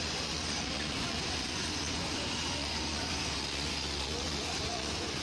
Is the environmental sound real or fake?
fake